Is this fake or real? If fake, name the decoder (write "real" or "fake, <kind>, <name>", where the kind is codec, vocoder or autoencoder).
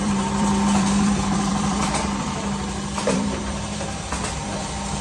fake, vocoder, BigVGAN v2